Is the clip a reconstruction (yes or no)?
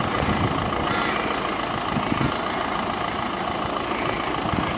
no